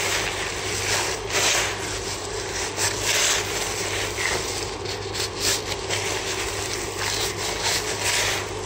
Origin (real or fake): real